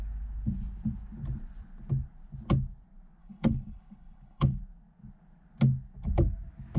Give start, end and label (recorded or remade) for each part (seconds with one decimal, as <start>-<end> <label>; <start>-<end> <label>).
0.0-3.2 recorded; 3.2-4.6 remade; 4.6-6.8 recorded